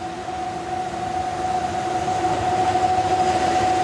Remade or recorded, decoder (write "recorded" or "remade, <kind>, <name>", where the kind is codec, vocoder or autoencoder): recorded